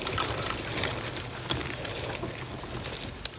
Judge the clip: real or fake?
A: real